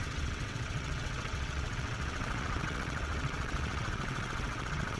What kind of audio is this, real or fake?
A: fake